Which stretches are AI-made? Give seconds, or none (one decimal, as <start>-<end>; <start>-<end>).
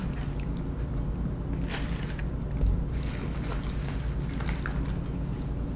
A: none